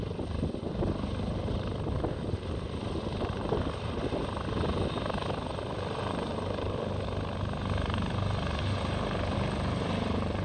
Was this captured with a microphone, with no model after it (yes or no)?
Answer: yes